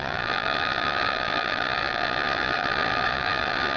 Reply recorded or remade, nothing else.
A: remade